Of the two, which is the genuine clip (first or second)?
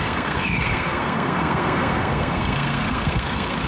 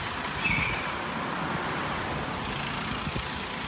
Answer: second